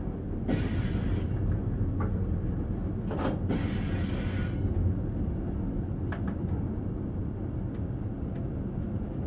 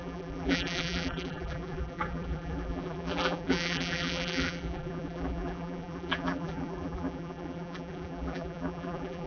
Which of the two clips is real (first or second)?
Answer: first